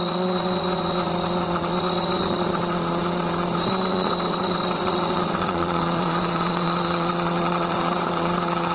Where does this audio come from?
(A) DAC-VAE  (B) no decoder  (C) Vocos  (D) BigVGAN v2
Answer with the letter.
C